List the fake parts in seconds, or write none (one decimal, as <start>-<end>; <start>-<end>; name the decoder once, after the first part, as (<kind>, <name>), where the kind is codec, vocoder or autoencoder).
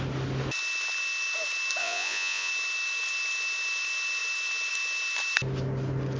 1.8-2.5 (vocoder, Vocos)